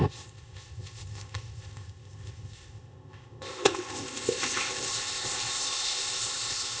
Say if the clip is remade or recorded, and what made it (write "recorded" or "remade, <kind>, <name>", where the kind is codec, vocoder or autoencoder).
remade, codec, ZipCodec